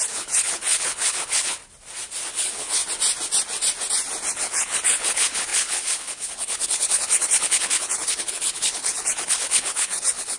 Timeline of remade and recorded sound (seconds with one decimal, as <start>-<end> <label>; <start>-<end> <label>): 0.0-1.6 remade; 1.6-2.3 recorded; 2.3-2.8 remade; 2.8-4.3 recorded; 4.3-10.4 remade